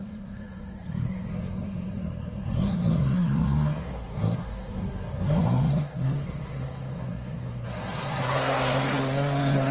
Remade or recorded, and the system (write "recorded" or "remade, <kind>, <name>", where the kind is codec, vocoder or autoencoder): remade, codec, SNAC